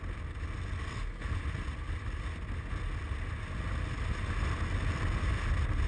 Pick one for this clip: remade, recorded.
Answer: recorded